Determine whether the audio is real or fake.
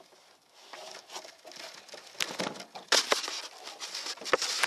real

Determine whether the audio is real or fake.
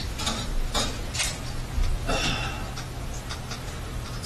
real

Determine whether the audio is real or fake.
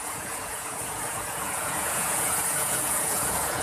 fake